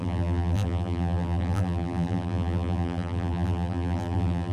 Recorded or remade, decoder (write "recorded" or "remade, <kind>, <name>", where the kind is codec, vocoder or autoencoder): remade, vocoder, BigVGAN v2